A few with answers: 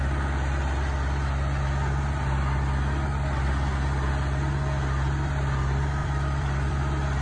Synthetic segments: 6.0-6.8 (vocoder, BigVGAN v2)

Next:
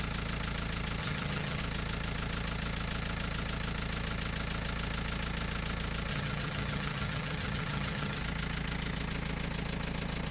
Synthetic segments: 1.0-1.6 (vocoder, HiFi-GAN); 6.1-8.2